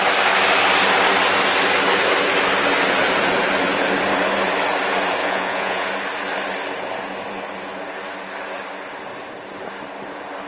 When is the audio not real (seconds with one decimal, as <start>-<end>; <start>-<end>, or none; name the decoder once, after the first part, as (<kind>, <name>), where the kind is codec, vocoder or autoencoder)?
5.2-5.9 (vocoder, Vocos)